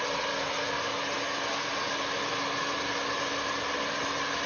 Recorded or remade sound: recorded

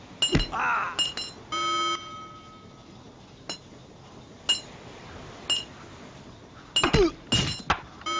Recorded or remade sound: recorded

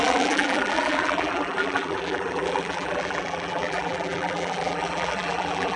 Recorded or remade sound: remade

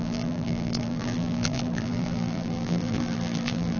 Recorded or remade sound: remade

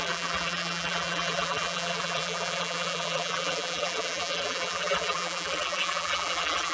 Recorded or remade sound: remade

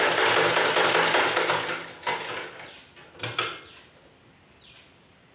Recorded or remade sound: recorded